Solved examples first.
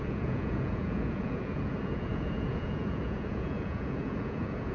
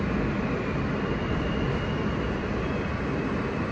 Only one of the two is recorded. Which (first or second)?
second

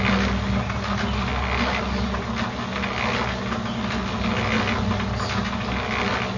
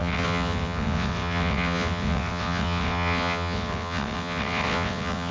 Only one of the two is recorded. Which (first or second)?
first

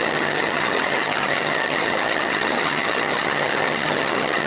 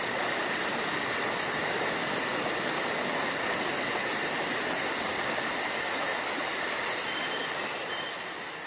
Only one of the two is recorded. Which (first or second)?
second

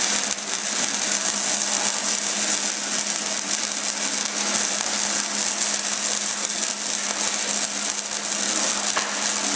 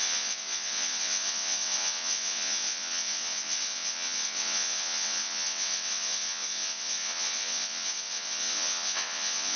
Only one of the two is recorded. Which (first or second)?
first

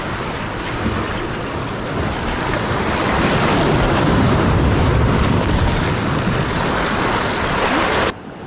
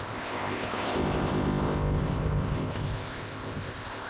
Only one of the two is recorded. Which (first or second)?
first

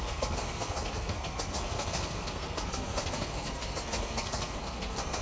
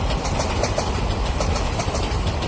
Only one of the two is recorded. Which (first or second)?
second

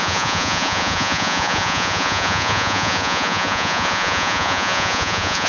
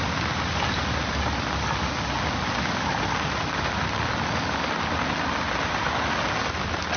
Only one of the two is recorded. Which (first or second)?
second